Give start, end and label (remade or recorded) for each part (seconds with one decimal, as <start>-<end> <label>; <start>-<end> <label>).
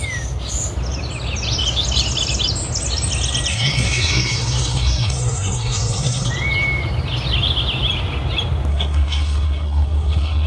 0.0-3.5 recorded; 3.5-6.3 remade; 6.3-8.7 recorded; 8.7-10.5 remade